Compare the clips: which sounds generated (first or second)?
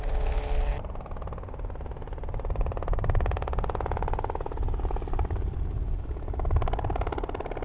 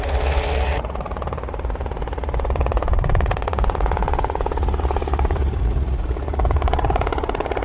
second